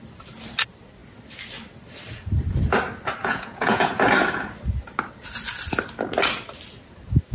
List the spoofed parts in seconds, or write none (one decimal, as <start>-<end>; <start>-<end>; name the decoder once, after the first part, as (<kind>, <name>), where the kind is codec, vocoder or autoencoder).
3.2-3.9 (vocoder, Vocos)